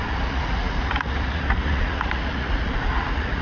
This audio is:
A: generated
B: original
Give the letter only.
A